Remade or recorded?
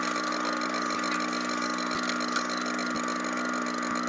recorded